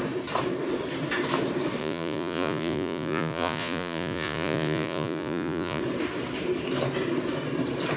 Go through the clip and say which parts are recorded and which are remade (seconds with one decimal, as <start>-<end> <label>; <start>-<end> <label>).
0.0-1.8 recorded; 1.8-5.8 remade; 5.8-8.0 recorded